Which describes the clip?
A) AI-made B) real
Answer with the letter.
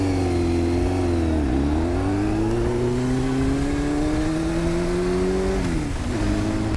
B